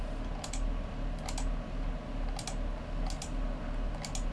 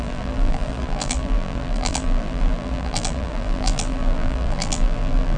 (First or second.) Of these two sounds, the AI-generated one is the second